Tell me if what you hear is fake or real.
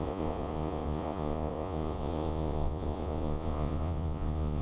fake